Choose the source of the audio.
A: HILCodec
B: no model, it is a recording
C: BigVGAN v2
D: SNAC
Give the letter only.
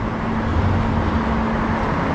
B